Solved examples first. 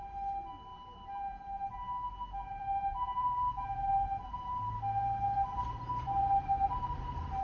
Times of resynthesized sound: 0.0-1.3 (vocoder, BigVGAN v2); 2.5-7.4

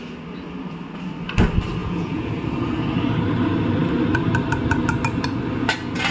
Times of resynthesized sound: 1.8-2.3 (vocoder, Vocos)

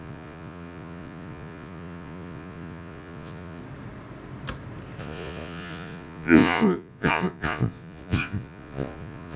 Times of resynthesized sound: 0.0-3.6 (vocoder, Vocos); 5.0-9.4

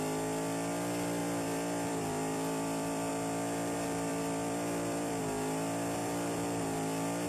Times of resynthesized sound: 1.2-3.1 (vocoder, BigVGAN v2); 4.1-5.2; 6.0-6.6

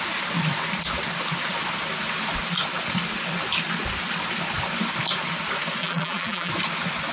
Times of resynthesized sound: 5.8-6.5 (vocoder, BigVGAN v2)